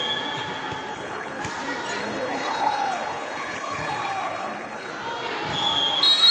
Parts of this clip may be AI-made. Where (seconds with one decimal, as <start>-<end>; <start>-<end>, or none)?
0.9-1.4; 2.0-4.9